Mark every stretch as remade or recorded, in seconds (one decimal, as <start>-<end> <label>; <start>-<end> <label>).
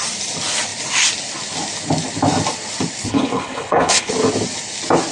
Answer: 0.0-3.1 recorded; 3.1-4.1 remade; 4.1-5.1 recorded